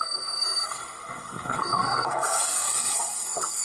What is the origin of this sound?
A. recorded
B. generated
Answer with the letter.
B